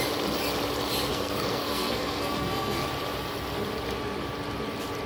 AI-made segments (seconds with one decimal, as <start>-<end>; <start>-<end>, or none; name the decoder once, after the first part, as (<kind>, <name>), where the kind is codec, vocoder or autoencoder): 1.1-2.8 (codec, SNAC)